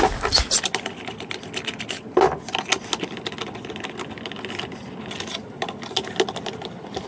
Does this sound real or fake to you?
real